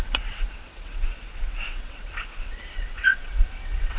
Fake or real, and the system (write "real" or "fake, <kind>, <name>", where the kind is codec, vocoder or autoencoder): fake, vocoder, WaveNeXt